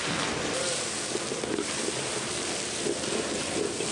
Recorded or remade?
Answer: recorded